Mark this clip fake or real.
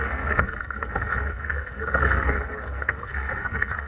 fake